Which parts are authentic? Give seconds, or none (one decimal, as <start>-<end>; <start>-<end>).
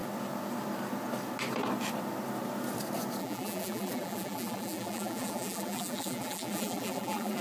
0.0-3.2